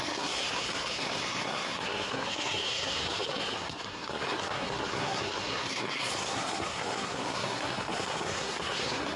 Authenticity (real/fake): fake